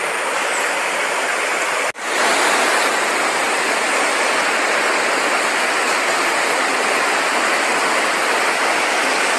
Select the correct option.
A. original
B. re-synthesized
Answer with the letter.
A